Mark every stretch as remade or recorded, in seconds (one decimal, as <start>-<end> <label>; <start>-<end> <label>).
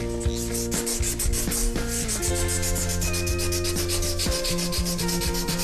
0.0-5.6 recorded